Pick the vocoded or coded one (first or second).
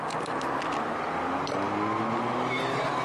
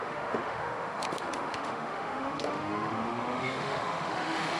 second